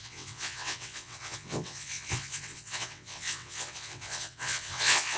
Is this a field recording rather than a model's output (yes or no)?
no